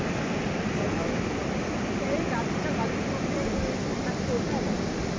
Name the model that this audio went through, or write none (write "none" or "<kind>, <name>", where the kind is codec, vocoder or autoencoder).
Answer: none